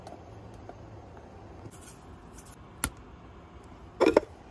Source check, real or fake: real